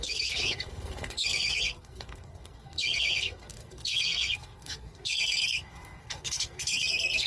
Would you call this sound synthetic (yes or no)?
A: yes